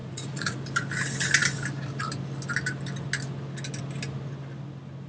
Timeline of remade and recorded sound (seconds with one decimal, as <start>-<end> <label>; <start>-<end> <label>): 0.0-0.6 remade; 0.6-5.1 recorded